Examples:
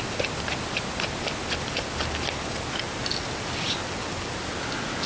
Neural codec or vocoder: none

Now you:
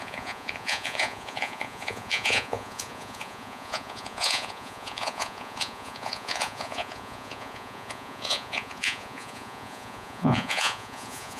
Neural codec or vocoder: vocoder, Vocos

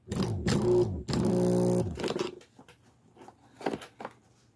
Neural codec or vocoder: none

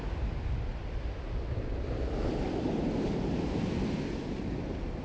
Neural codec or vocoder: vocoder, BigVGAN v2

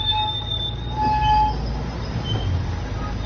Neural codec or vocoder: none